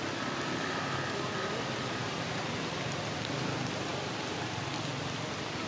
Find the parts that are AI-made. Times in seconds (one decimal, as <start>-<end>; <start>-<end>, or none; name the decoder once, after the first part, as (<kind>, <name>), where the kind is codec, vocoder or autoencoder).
none